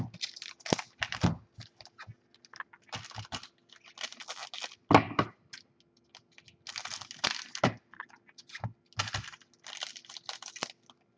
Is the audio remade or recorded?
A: recorded